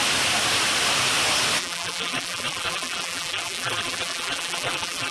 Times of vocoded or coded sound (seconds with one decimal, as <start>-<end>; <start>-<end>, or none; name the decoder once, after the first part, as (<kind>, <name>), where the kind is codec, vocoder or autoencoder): 1.6-5.1 (vocoder, BigVGAN v2)